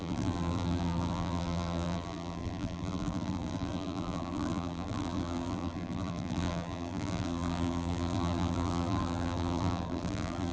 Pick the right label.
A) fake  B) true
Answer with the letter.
A